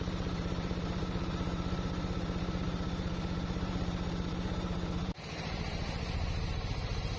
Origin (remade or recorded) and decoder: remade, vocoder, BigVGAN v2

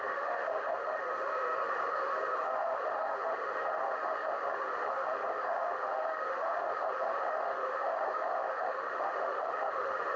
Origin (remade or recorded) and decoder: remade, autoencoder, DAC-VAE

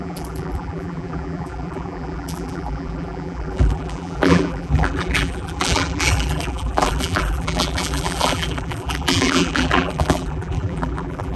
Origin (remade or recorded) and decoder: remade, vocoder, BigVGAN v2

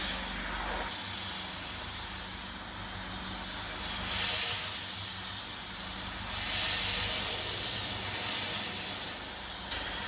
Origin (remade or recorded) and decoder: recorded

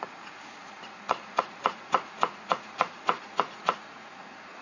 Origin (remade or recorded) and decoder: remade, vocoder, Vocos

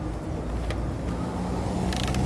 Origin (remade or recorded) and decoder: recorded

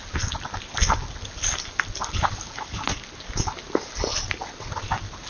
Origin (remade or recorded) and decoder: recorded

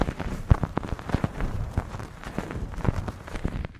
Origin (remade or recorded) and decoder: remade, vocoder, BigVGAN v2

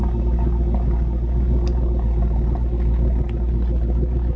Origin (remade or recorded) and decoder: recorded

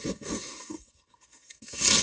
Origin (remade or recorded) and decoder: remade, codec, SNAC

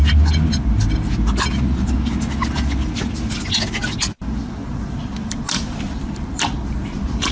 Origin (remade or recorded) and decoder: recorded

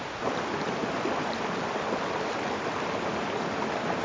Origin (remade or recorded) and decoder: recorded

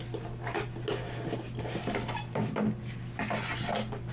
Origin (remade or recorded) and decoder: recorded